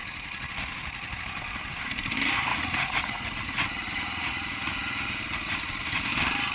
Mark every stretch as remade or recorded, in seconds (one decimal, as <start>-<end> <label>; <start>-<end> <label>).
0.0-2.5 recorded; 2.5-5.2 remade; 5.2-6.5 recorded